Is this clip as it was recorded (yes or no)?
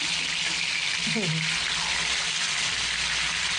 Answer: yes